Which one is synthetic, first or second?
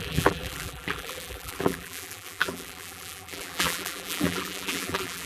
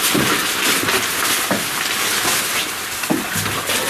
first